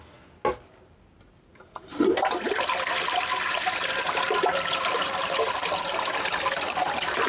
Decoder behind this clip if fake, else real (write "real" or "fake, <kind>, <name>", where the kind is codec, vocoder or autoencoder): real